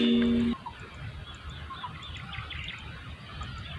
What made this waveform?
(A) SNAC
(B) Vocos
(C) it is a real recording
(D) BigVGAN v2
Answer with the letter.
C